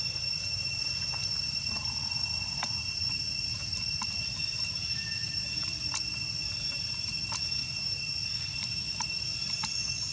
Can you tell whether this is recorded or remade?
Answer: recorded